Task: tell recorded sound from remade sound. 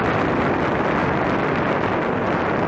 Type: recorded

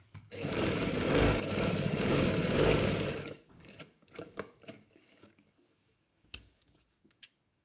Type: remade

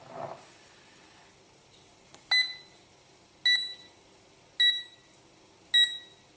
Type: recorded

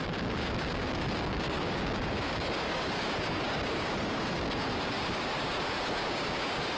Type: remade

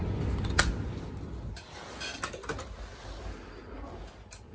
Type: recorded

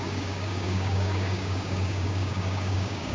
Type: remade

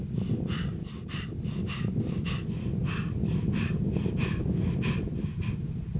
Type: recorded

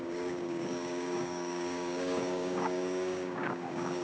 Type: remade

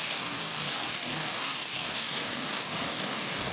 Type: remade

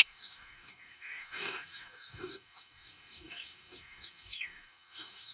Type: remade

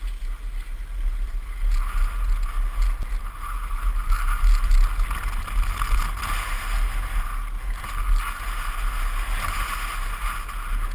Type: recorded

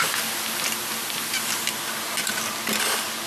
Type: recorded